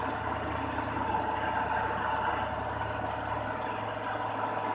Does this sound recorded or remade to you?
recorded